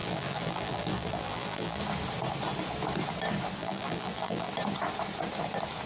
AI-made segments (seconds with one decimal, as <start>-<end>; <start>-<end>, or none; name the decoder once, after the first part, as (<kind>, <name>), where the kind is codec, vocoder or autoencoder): 0.0-1.8 (vocoder, BigVGAN v2); 3.6-4.5